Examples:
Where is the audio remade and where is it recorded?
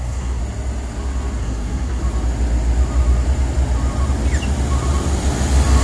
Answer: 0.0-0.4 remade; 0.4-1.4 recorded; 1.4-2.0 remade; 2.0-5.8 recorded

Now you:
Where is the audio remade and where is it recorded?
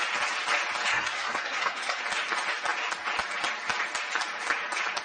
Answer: 0.0-0.9 recorded; 0.9-2.0 remade; 2.0-5.0 recorded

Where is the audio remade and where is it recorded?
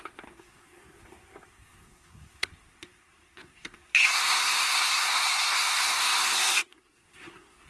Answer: 0.0-7.7 remade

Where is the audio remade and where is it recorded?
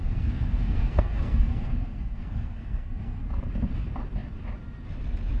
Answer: 0.0-3.2 remade; 3.2-5.4 recorded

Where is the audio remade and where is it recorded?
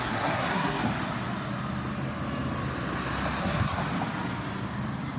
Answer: 0.0-0.9 remade; 0.9-3.4 recorded; 3.4-3.8 remade; 3.8-5.2 recorded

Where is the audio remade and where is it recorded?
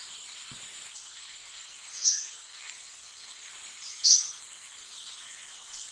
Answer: 0.0-0.9 recorded; 0.9-3.5 remade; 3.5-3.9 recorded; 3.9-5.9 remade